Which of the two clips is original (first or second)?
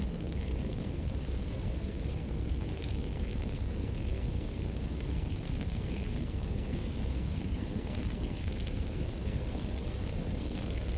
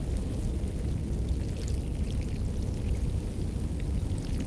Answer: second